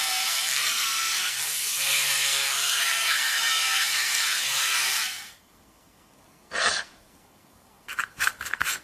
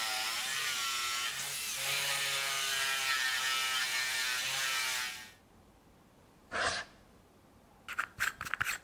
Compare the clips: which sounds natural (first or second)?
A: second